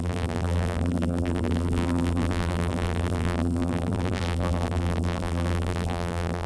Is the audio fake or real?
fake